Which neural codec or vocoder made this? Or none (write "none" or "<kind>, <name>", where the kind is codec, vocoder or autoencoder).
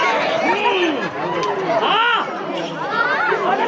none